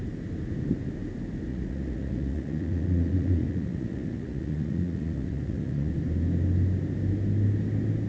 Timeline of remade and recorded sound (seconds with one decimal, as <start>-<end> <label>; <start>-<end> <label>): 0.0-1.5 recorded; 1.5-5.9 remade; 5.9-8.1 recorded